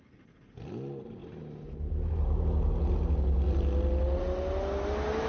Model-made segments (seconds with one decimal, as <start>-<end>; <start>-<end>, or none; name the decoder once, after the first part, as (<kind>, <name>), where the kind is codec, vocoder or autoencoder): none